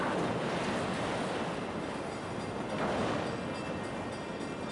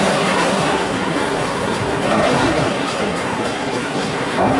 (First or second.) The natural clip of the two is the first